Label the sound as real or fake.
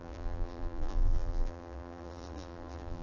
fake